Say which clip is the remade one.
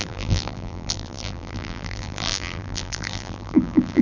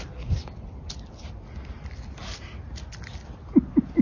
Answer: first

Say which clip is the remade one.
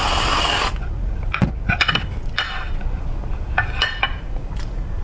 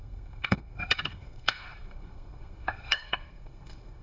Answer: second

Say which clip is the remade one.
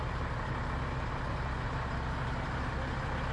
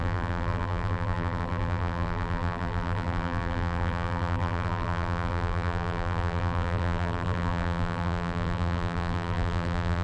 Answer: second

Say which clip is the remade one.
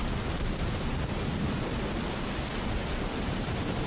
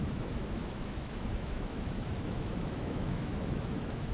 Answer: second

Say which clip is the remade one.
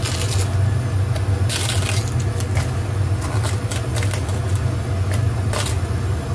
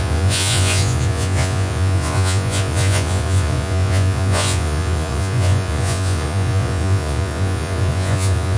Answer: second